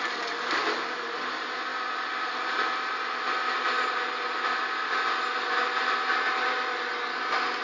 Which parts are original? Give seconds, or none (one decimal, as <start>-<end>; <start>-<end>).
0.0-7.6